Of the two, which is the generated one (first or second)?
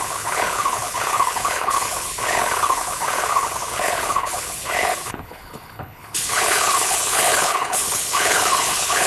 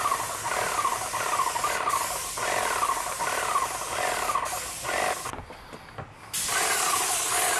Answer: first